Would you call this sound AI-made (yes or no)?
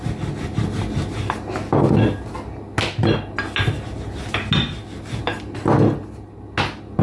no